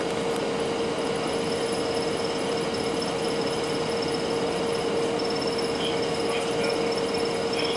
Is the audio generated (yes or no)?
no